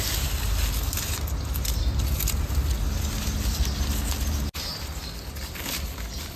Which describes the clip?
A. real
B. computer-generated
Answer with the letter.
A